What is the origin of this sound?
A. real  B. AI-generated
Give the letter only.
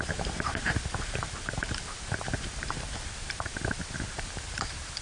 B